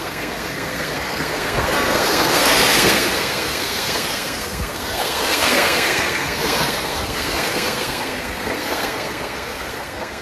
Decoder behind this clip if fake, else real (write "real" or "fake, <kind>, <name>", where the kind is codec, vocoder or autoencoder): fake, codec, SNAC